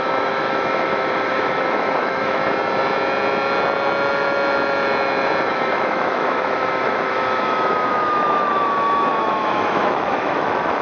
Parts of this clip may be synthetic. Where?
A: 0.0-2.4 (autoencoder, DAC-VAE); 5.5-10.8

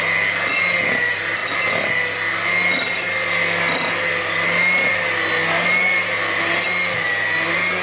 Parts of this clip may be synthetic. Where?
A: none

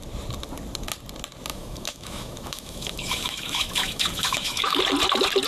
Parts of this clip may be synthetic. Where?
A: 1.5-4.8 (autoencoder, DAC-VAE)